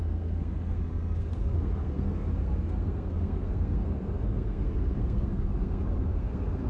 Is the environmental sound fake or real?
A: fake